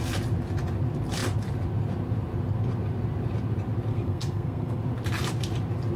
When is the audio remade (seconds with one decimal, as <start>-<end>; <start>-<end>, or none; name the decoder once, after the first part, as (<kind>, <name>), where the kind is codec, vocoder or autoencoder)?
3.9-4.8 (codec, SNAC)